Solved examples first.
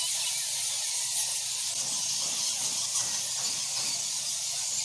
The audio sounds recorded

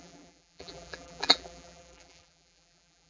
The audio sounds remade